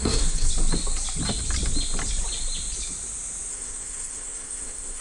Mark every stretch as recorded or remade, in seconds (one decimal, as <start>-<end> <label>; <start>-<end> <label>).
0.0-0.5 remade; 0.5-3.5 recorded; 3.5-5.0 remade